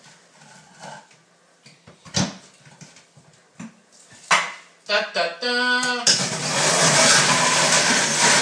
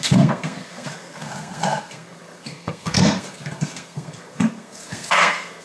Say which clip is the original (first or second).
first